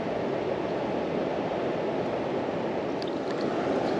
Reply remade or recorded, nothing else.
recorded